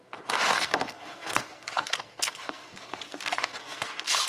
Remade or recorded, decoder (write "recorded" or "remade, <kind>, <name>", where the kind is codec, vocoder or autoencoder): remade, codec, SNAC